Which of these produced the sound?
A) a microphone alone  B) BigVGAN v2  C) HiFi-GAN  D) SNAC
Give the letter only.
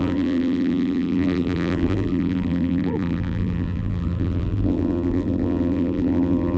B